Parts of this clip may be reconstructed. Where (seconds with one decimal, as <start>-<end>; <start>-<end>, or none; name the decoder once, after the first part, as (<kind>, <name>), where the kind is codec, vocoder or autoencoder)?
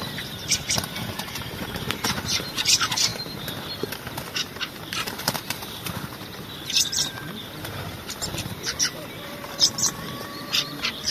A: 0.0-3.1 (vocoder, BigVGAN v2); 4.4-11.1